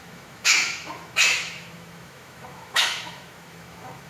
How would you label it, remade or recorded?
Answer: remade